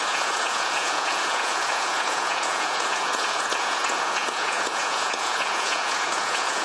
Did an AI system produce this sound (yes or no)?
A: yes